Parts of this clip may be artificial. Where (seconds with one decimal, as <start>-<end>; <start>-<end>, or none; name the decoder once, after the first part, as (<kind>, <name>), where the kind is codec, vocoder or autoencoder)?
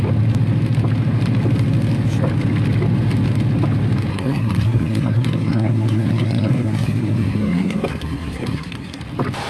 4.1-9.0 (codec, SNAC)